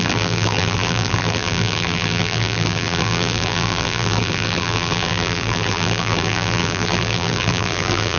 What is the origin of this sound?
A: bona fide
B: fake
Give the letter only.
B